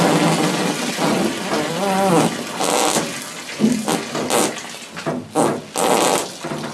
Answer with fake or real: real